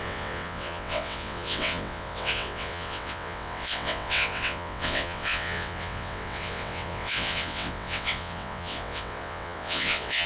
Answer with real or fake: fake